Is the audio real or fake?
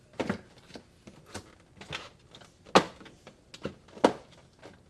real